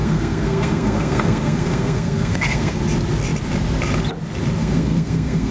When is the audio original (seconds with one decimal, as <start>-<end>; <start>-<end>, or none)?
2.8-4.6